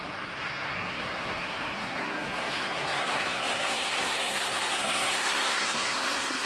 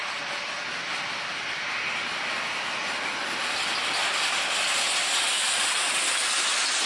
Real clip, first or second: second